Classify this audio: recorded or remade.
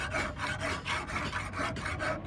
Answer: recorded